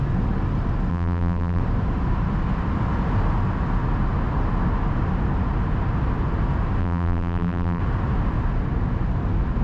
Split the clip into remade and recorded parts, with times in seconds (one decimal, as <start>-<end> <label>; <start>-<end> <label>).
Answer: 0.0-0.9 recorded; 0.9-1.6 remade; 1.6-6.8 recorded; 6.8-7.8 remade; 7.8-9.6 recorded